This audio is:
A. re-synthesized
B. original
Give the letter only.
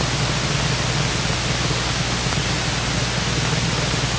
B